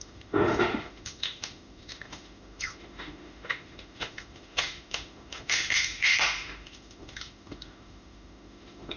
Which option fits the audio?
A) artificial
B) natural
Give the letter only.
A